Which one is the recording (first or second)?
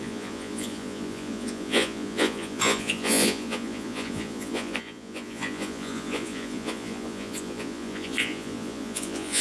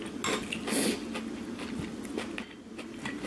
second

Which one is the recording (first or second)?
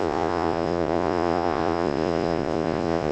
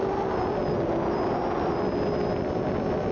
second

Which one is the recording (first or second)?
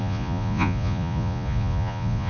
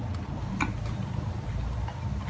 second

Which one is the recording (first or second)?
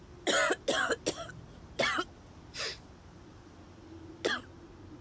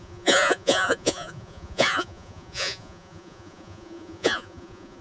first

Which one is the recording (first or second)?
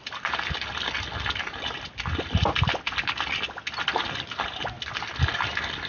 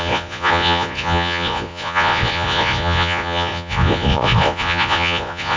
first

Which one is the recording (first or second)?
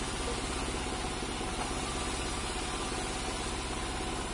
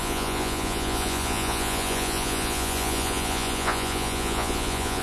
first